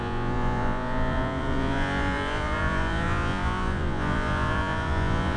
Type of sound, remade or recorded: remade